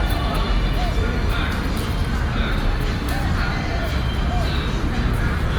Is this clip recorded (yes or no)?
yes